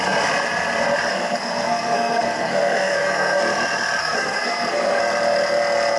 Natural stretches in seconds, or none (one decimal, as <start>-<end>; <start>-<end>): 0.0-1.1; 3.4-4.0; 5.0-6.0